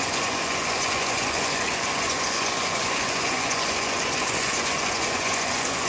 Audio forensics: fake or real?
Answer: fake